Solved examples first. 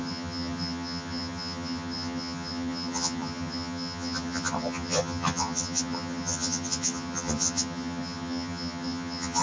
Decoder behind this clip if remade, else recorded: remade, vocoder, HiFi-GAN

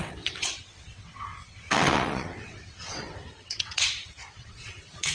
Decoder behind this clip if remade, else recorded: remade, vocoder, WaveNeXt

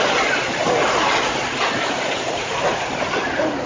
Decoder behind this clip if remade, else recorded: recorded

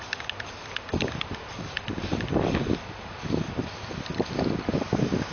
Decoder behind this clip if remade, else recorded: recorded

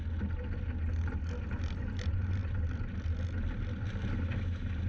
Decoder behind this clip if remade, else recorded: recorded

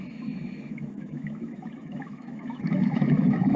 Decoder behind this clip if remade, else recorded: remade, autoencoder, DAC-VAE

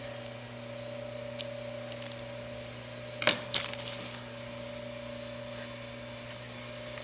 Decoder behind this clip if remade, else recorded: recorded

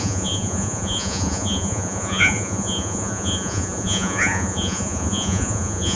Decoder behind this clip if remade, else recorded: remade, vocoder, Vocos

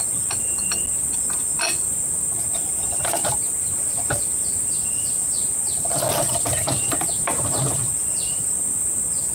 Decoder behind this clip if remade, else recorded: recorded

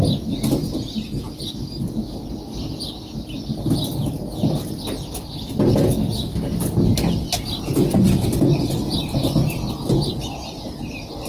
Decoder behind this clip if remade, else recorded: recorded